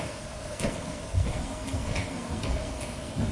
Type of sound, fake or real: fake